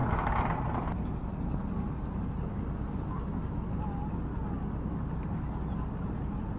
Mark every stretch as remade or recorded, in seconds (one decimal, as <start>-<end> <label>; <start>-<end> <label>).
0.0-6.6 recorded